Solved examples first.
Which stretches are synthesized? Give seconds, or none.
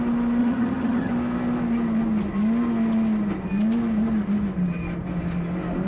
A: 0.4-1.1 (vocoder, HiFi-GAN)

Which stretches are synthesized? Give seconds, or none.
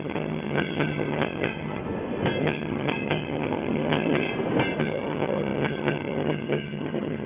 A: 0.0-1.8 (vocoder, HiFi-GAN); 2.4-4.3; 4.8-7.3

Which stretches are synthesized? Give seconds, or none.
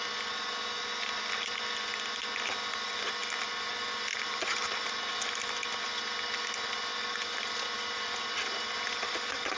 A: none